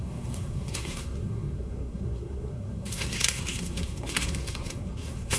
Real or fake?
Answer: fake